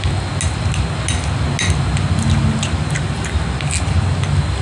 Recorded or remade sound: recorded